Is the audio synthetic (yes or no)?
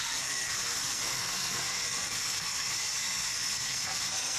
yes